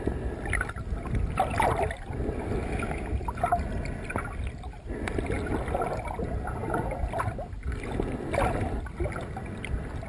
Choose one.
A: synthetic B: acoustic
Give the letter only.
B